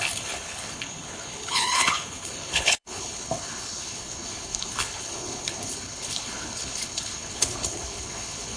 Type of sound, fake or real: fake